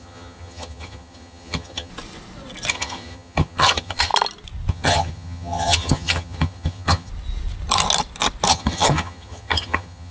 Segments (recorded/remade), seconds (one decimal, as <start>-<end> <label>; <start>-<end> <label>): 0.0-1.9 remade; 1.9-2.7 recorded; 2.7-4.1 remade; 4.1-4.7 recorded; 4.7-7.1 remade; 7.1-8.5 recorded; 8.5-10.1 remade